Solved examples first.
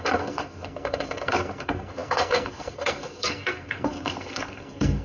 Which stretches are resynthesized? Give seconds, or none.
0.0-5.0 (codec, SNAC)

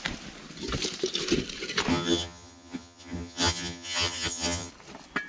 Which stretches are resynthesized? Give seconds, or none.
1.9-4.7 (vocoder, HiFi-GAN)

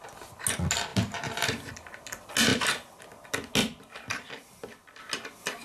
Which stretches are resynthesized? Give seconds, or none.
2.5-3.0 (vocoder, BigVGAN v2); 3.6-5.0

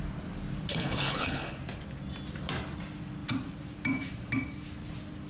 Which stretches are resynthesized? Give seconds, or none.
0.7-1.6 (codec, HILCodec)

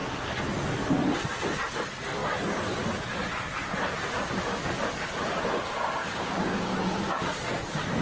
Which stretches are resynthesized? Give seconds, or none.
6.0-6.7 (codec, DAC)

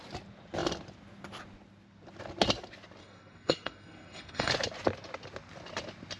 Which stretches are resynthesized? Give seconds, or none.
3.0-4.5 (codec, SNAC)